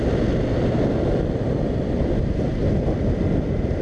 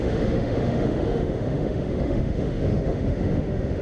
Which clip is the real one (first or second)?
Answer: first